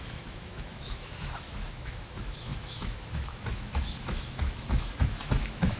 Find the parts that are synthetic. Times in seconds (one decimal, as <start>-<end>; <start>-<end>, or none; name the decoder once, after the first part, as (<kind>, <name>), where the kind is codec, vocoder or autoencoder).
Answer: 0.0-5.8 (autoencoder, DAC-VAE)

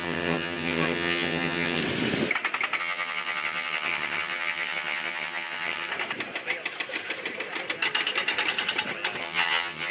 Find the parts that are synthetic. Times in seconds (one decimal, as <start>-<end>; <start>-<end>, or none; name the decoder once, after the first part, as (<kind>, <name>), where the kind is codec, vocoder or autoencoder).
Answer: 0.0-1.8 (vocoder, HiFi-GAN); 2.8-5.9; 9.2-9.9

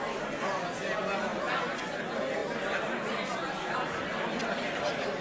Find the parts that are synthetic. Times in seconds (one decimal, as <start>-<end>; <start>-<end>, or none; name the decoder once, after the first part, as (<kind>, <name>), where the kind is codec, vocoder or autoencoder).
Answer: none

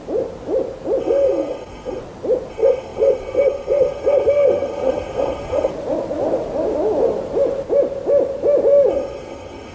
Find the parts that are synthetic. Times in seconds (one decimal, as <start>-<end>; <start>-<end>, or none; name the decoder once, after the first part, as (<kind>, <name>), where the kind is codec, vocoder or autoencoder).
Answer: 1.0-2.0 (codec, SNAC); 2.5-5.7; 8.9-9.7

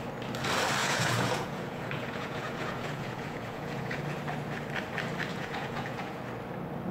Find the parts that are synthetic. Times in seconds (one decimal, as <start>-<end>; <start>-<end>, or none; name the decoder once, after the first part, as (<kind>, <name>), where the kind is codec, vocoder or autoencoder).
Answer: 0.8-4.0 (vocoder, Vocos); 5.3-6.2